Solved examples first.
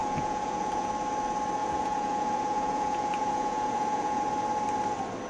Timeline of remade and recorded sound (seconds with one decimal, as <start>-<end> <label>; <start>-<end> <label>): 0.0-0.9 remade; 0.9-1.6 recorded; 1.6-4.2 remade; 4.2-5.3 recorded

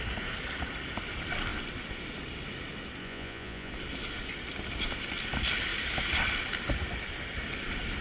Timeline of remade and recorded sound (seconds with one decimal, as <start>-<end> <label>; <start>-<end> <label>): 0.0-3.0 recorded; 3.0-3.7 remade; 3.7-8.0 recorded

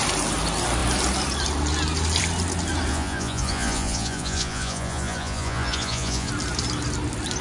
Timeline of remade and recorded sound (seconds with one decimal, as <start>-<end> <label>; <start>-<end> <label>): 0.0-2.9 recorded; 2.9-6.3 remade; 6.3-7.4 recorded

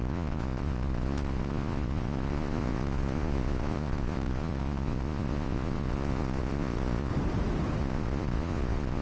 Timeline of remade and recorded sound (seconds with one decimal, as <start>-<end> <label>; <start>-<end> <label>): 0.0-7.1 remade; 7.1-7.8 recorded; 7.8-9.0 remade

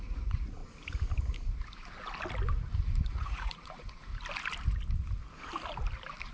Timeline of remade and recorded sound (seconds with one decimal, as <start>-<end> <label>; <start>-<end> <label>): 0.0-0.6 remade; 0.6-3.1 recorded; 3.1-4.1 remade; 4.1-6.3 recorded

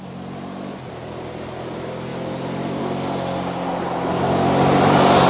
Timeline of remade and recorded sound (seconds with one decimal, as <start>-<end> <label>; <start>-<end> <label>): 0.0-5.3 recorded